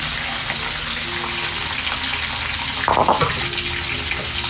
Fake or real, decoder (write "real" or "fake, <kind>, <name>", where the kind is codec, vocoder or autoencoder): real